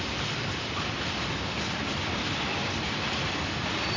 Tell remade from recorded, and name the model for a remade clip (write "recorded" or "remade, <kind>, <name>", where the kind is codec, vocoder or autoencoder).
recorded